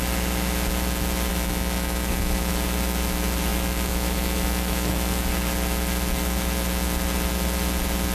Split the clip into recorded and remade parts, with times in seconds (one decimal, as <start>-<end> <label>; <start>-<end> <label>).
0.0-1.3 recorded; 1.3-2.5 remade; 2.5-3.5 recorded; 3.5-5.3 remade; 5.3-8.1 recorded